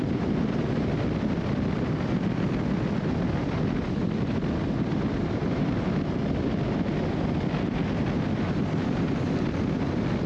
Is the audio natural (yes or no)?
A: yes